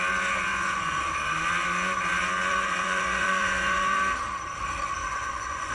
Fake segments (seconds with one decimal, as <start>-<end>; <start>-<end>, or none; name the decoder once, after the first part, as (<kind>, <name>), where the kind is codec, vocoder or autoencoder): 0.5-1.1 (vocoder, Vocos); 2.5-4.0; 5.0-5.7